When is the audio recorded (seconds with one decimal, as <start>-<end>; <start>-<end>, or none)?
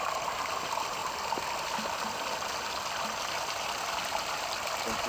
0.0-5.1